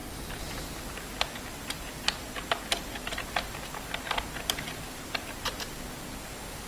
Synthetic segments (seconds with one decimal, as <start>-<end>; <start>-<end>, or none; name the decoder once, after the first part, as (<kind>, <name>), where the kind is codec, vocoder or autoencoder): none